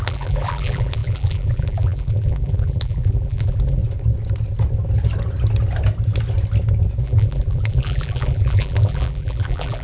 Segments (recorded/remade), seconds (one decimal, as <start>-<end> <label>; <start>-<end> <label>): 0.0-3.8 remade; 3.8-7.0 recorded; 7.0-9.8 remade